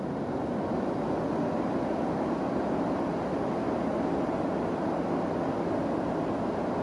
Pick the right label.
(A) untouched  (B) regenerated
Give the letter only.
A